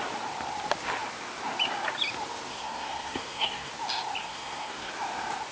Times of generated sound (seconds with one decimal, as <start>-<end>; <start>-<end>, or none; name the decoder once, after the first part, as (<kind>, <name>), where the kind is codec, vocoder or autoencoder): 2.5-3.7 (codec, SNAC); 4.2-4.9